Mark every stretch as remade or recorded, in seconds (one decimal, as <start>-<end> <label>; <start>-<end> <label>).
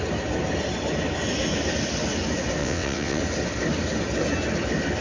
0.0-2.6 recorded; 2.6-3.2 remade; 3.2-5.0 recorded